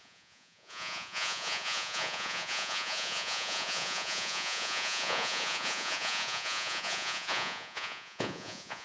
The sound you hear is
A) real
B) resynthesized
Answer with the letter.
B